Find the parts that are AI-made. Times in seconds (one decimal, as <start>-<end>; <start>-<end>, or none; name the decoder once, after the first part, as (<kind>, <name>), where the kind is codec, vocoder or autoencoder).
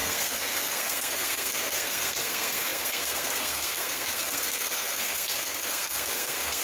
0.0-6.6 (codec, SNAC)